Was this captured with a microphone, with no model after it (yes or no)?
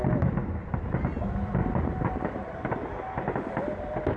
yes